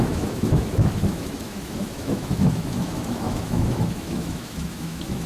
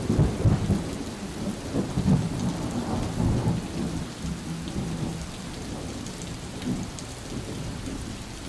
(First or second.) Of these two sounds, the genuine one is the second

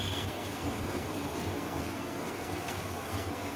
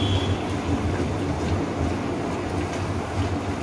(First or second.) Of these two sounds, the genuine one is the second